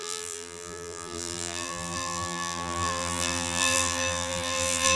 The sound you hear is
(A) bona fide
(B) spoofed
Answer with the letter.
B